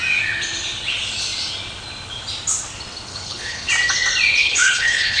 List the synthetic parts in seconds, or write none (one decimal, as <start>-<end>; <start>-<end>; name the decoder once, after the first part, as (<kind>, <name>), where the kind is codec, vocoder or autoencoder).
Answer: 3.1-3.7 (codec, HILCodec); 4.4-5.2